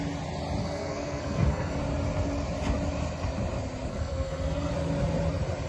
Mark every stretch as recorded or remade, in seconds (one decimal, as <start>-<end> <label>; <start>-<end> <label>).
0.0-0.6 recorded; 0.6-1.8 remade; 1.8-3.9 recorded; 3.9-4.7 remade; 4.7-5.7 recorded